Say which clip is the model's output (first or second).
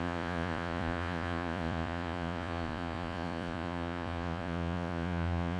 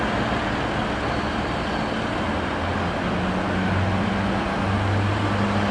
first